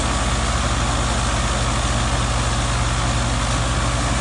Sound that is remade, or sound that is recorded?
recorded